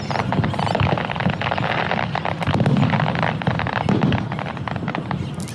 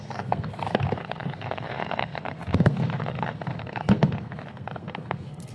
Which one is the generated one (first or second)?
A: second